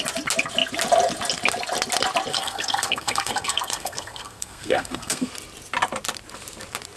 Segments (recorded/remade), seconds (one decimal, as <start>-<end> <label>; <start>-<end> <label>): 0.0-2.3 recorded; 2.3-5.3 remade; 5.3-7.0 recorded